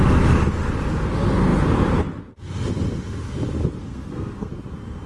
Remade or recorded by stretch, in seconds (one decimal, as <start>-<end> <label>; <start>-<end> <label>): 0.0-3.8 recorded; 3.8-4.5 remade; 4.5-5.1 recorded